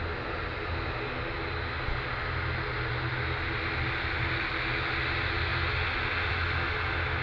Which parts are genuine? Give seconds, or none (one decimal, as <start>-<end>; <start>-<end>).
0.0-7.2